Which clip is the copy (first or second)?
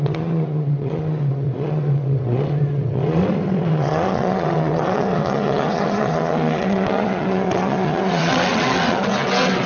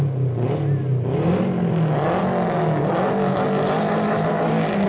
first